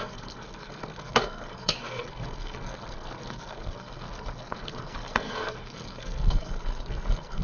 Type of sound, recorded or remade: remade